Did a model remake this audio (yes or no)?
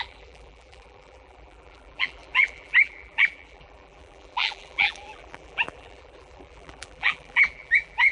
yes